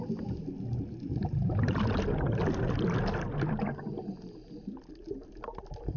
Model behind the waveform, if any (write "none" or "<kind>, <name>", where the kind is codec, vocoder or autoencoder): none